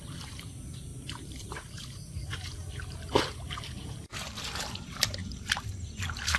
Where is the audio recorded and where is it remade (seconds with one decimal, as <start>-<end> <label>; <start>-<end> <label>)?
0.0-6.4 remade